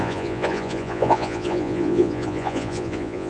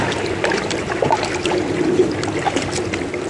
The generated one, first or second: first